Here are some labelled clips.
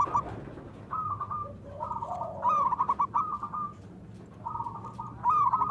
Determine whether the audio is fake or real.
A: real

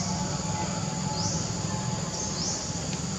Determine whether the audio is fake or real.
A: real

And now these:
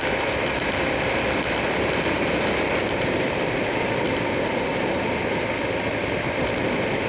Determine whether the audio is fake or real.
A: real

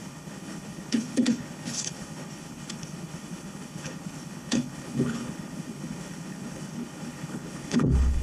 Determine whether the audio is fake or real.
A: fake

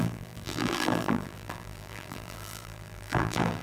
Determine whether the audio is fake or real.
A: fake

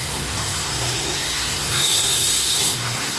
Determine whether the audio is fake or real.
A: fake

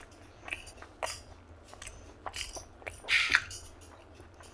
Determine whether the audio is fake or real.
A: real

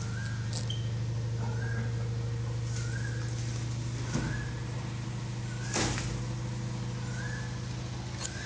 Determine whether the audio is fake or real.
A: real